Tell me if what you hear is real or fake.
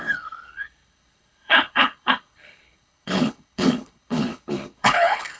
fake